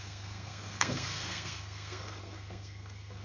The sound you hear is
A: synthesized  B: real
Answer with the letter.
A